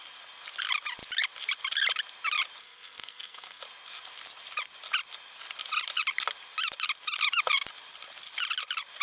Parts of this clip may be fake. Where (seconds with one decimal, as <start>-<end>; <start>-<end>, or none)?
2.6-3.6